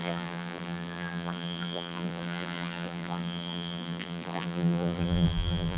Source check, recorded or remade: remade